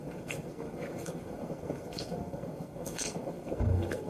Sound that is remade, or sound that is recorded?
remade